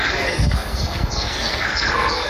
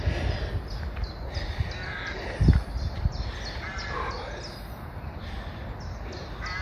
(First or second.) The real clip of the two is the second